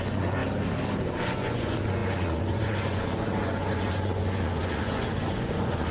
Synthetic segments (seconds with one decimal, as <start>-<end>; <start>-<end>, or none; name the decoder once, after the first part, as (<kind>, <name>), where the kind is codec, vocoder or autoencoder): 0.0-0.4 (vocoder, Vocos); 1.0-5.9